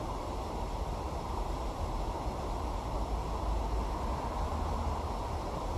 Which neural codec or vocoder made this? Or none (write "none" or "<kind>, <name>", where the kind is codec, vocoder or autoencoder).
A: none